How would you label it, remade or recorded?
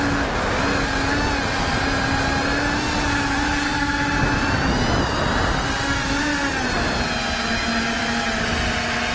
recorded